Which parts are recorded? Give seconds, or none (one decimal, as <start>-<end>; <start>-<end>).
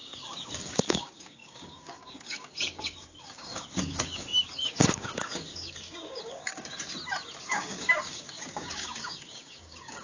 6.9-7.4